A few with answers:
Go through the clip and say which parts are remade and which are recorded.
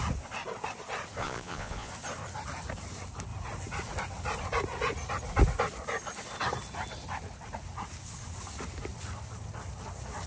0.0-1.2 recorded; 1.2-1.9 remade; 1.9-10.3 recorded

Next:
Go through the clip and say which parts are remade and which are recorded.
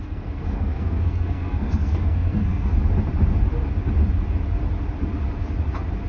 0.0-2.7 remade; 2.7-6.1 recorded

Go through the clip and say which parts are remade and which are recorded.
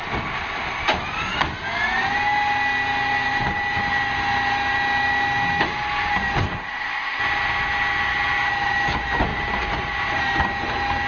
0.0-6.4 recorded; 6.4-7.2 remade; 7.2-11.1 recorded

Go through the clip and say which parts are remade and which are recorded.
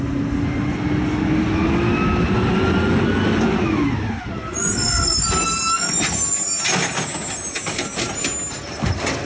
0.0-9.3 recorded